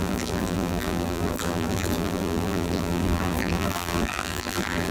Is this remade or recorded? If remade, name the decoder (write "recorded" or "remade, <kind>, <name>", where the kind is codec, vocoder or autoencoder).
remade, vocoder, BigVGAN v2